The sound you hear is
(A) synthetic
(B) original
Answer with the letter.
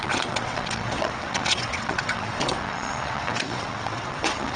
A